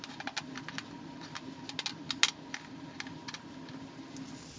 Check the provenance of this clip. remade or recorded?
recorded